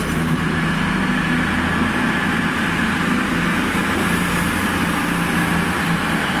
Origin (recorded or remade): recorded